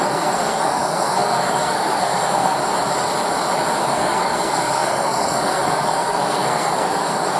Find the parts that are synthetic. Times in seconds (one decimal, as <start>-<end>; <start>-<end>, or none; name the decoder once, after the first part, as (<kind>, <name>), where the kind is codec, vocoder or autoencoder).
0.0-2.6 (codec, SNAC); 3.8-7.4